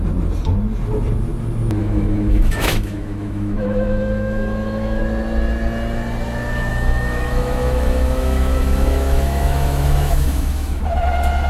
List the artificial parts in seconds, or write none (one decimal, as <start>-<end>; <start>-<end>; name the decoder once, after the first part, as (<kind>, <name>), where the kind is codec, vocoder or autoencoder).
1.8-5.0 (autoencoder, DAC-VAE); 6.7-10.8